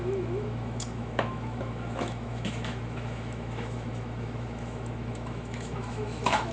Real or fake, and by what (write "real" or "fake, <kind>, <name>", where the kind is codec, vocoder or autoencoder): fake, autoencoder, DAC-VAE